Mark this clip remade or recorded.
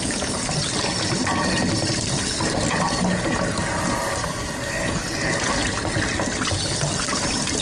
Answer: recorded